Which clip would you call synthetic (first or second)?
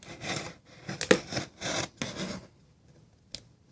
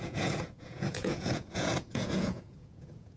second